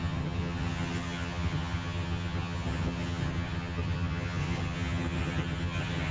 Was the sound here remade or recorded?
remade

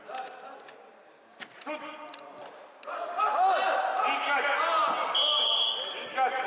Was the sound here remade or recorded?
recorded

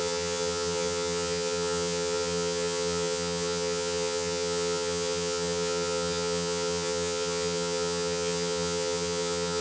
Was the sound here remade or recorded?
remade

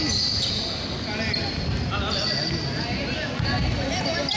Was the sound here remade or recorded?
recorded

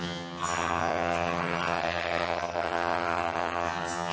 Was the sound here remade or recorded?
remade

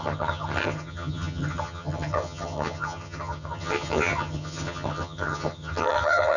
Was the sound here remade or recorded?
remade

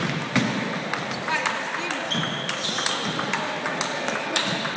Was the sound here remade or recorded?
recorded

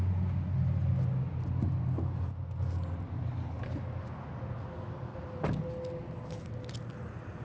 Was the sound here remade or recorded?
recorded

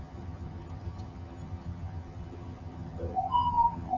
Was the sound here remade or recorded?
remade